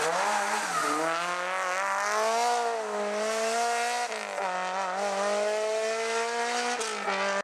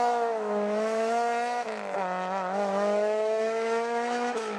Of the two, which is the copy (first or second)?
second